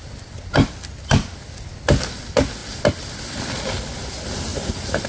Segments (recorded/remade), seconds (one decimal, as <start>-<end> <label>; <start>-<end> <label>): 0.0-4.5 recorded; 4.5-5.1 remade